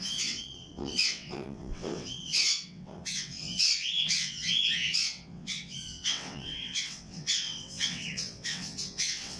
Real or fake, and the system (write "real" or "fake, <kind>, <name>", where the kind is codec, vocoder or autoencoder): fake, vocoder, WaveNeXt